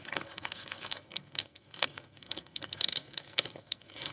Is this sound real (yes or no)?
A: no